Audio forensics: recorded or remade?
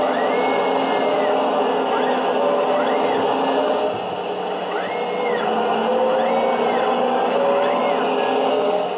recorded